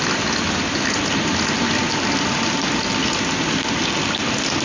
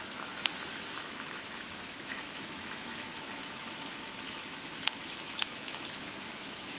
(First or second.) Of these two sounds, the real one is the first